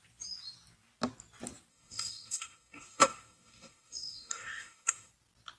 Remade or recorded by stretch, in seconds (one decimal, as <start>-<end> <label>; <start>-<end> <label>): 0.0-1.7 recorded; 1.7-5.1 remade; 5.1-5.6 recorded

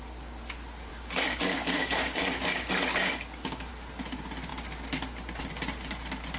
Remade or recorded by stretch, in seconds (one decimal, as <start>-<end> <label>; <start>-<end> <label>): 0.0-0.9 recorded; 0.9-2.2 remade; 2.2-3.0 recorded; 3.0-3.7 remade; 3.7-6.4 recorded

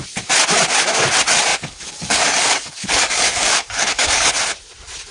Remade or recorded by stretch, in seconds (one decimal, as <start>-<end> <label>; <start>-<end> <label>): 0.0-1.5 recorded; 1.5-4.3 remade; 4.3-5.1 recorded

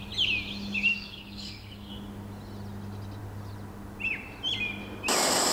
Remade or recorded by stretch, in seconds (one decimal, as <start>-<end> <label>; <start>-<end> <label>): 0.0-0.9 recorded; 0.9-1.9 remade; 1.9-5.5 recorded

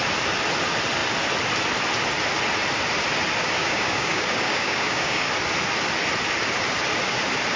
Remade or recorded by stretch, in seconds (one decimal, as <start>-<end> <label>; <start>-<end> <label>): 0.0-3.4 recorded; 3.4-5.3 remade; 5.3-7.6 recorded

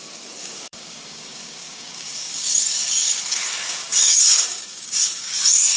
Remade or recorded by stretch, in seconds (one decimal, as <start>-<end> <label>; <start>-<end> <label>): 0.0-5.8 remade

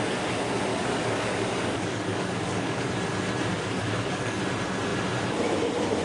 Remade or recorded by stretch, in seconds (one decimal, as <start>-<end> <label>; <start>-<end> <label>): 0.0-0.7 recorded; 0.7-2.9 remade; 2.9-3.5 recorded; 3.5-4.4 remade; 4.4-6.0 recorded